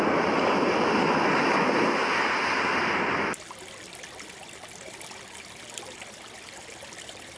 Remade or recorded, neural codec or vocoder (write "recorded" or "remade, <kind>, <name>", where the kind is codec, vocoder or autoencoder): recorded